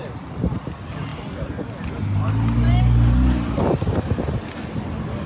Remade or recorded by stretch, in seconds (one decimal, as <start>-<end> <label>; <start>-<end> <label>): 0.0-5.3 recorded